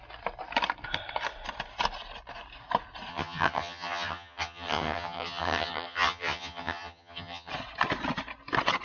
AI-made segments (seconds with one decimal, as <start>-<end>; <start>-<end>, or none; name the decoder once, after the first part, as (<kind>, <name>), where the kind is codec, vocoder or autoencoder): 3.1-7.5 (vocoder, HiFi-GAN)